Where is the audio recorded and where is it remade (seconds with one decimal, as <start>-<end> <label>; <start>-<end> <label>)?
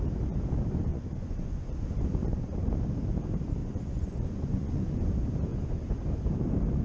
0.0-0.9 recorded; 0.9-2.7 remade; 2.7-3.6 recorded; 3.6-5.1 remade; 5.1-5.5 recorded; 5.5-6.0 remade; 6.0-6.8 recorded